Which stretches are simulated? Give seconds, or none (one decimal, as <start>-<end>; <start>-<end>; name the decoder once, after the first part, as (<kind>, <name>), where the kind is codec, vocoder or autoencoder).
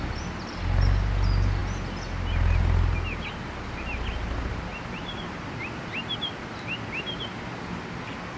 none